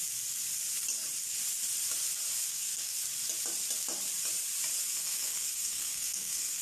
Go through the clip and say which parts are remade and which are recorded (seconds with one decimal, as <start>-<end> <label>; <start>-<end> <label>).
0.0-2.5 recorded; 2.5-3.0 remade; 3.0-5.0 recorded; 5.0-6.6 remade